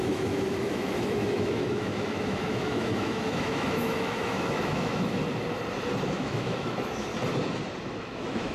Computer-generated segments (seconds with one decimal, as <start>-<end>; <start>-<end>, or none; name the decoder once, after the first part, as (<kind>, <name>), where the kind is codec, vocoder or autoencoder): 0.0-5.2 (autoencoder, DAC-VAE); 6.1-7.1; 7.9-8.5